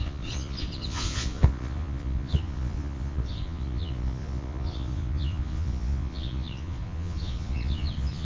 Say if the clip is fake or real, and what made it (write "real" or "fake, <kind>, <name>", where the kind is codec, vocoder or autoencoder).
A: fake, vocoder, Vocos